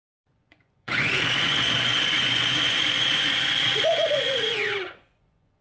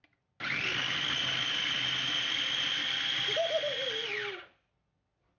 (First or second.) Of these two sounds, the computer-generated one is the first